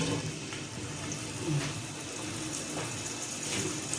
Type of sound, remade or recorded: recorded